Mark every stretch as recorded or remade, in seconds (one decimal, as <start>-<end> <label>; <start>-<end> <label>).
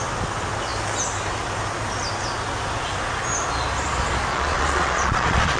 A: 0.0-4.3 recorded; 4.3-5.6 remade